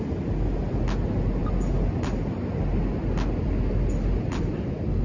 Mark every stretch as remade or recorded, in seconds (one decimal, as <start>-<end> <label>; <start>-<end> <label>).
0.0-5.0 recorded